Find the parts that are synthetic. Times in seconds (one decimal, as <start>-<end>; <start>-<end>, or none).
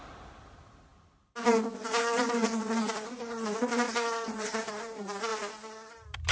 none